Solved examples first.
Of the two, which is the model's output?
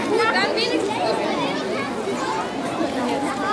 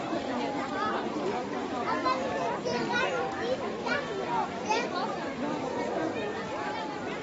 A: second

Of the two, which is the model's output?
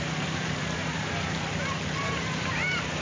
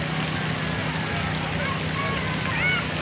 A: first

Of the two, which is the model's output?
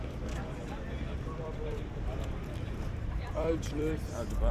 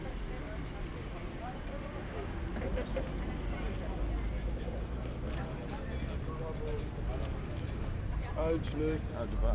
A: first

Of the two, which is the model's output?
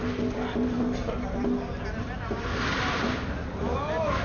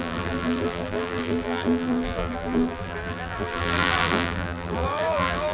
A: second